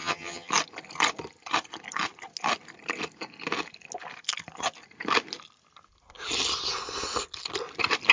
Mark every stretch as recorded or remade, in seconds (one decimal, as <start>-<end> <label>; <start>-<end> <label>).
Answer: 0.0-0.5 remade; 0.5-8.1 recorded